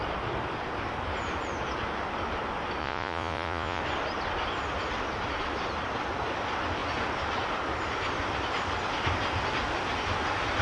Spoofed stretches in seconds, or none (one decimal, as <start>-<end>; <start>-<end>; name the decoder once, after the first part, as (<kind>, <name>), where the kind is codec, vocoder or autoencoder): 2.8-3.8 (vocoder, Vocos)